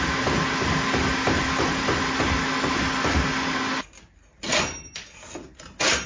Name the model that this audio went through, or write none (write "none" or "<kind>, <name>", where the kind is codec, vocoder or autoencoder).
none